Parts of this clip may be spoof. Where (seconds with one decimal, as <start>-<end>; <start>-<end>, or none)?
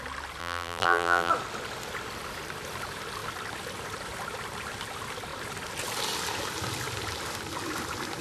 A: 0.4-1.3